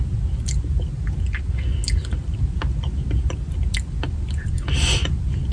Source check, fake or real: real